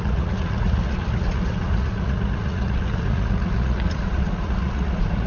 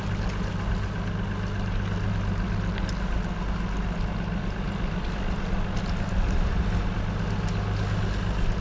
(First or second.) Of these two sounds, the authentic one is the second